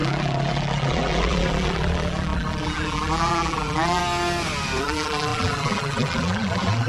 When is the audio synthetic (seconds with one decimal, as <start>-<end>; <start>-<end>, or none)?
0.0-4.0; 4.8-6.9